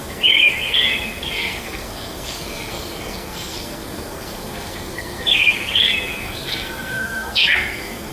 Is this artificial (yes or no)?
yes